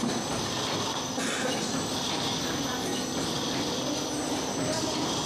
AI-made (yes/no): no